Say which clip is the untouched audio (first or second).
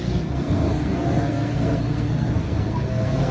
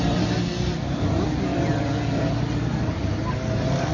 second